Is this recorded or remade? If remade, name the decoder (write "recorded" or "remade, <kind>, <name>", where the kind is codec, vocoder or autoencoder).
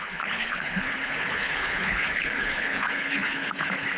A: remade, codec, HILCodec